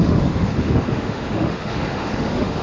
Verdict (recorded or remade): remade